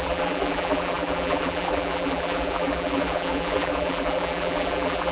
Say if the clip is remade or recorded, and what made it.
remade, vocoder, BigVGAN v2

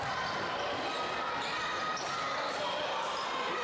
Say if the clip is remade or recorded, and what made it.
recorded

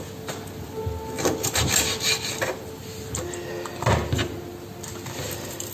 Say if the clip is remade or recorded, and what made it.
recorded